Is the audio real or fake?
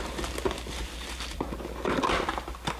real